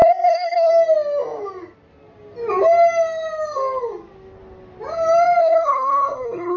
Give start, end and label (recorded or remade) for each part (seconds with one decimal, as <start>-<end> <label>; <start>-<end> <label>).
0.0-0.7 remade; 0.7-5.4 recorded; 5.4-6.6 remade

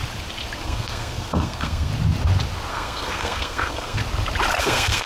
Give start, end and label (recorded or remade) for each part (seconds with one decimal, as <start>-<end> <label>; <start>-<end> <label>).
0.0-0.6 recorded; 0.6-1.9 remade; 1.9-2.7 recorded; 2.7-4.0 remade; 4.0-4.6 recorded; 4.6-5.1 remade

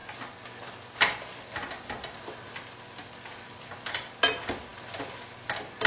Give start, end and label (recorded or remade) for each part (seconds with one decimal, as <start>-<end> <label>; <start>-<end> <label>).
0.0-5.9 recorded

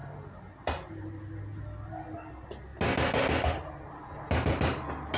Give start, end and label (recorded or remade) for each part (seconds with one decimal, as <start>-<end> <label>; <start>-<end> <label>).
0.0-5.2 recorded

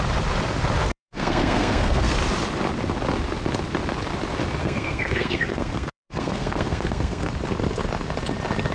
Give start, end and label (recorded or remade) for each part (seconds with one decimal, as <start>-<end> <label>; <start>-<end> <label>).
0.0-0.8 recorded; 0.8-2.2 remade; 2.2-4.6 recorded; 4.6-7.3 remade; 7.3-8.7 recorded